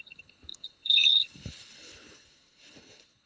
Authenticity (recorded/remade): remade